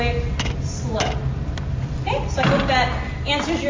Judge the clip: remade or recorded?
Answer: recorded